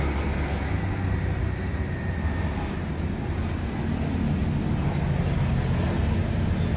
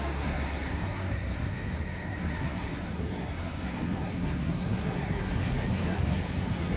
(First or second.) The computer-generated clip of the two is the second